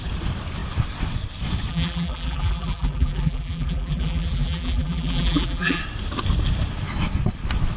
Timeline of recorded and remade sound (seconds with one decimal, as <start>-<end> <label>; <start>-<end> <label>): 0.0-1.7 recorded; 1.7-5.8 remade; 5.8-7.8 recorded